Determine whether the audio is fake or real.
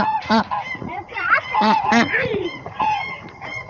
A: fake